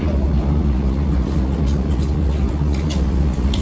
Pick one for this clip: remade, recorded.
remade